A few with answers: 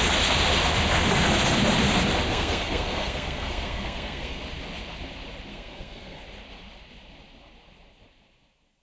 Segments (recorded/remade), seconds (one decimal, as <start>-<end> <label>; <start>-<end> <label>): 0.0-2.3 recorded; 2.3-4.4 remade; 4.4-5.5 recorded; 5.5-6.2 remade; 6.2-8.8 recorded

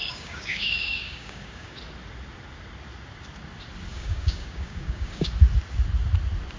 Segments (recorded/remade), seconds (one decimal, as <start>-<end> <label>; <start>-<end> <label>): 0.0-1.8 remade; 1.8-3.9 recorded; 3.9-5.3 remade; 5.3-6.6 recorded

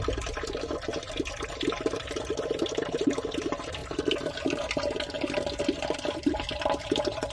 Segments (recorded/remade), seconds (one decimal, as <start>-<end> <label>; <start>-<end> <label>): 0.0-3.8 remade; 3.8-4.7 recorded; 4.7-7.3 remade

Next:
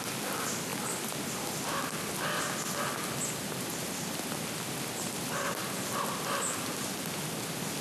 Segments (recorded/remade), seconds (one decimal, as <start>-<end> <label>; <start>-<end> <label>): 0.0-7.8 recorded

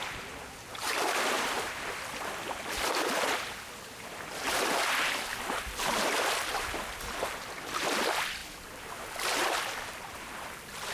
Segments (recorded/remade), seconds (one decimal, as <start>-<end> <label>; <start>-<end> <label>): 0.0-10.9 recorded

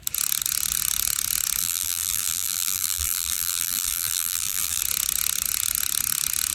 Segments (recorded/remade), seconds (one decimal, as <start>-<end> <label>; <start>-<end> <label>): 0.0-1.6 recorded; 1.6-4.8 remade; 4.8-6.5 recorded

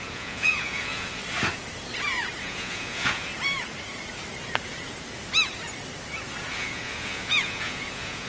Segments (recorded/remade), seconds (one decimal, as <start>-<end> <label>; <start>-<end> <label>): 0.0-1.2 remade; 1.2-2.4 recorded; 2.4-3.3 remade; 3.3-6.5 recorded; 6.5-8.3 remade